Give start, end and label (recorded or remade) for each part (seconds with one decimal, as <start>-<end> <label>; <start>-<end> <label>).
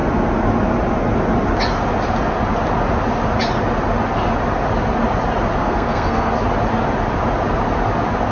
0.0-5.6 recorded; 5.6-6.3 remade; 6.3-8.3 recorded